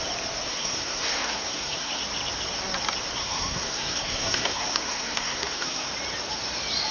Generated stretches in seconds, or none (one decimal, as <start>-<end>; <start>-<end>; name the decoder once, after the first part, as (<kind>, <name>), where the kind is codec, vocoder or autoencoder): 0.5-2.0 (codec, SNAC); 3.2-5.9